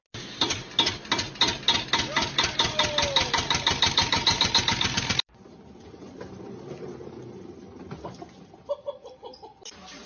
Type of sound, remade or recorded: recorded